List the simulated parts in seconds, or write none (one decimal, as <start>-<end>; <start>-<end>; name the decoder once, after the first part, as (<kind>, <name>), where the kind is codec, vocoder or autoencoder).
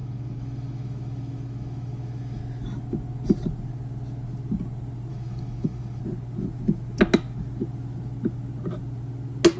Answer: 0.0-2.4 (autoencoder, DAC-VAE); 5.1-6.0